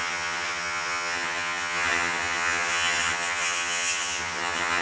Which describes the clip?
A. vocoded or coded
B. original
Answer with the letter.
A